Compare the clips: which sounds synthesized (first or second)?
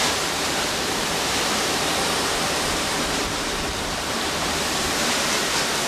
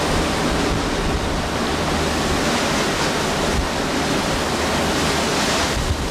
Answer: first